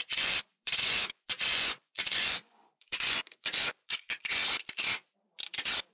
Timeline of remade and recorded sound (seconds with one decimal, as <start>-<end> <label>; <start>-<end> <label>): 0.0-4.4 remade; 4.4-5.9 recorded